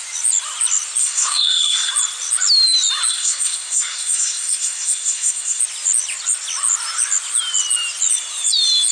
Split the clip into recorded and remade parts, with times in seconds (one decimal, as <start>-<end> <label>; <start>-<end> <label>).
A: 0.0-1.0 recorded; 1.0-1.9 remade; 1.9-3.1 recorded; 3.1-5.6 remade; 5.6-8.9 recorded